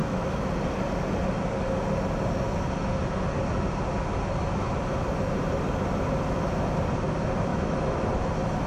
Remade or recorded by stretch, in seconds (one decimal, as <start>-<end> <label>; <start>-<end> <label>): 0.0-0.5 remade; 0.5-7.5 recorded; 7.5-8.1 remade; 8.1-8.7 recorded